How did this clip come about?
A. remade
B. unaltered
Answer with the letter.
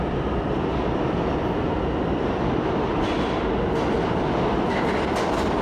B